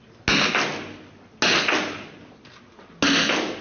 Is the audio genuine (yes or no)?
yes